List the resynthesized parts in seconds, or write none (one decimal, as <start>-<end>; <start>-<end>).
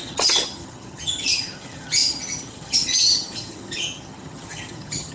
0.0-5.1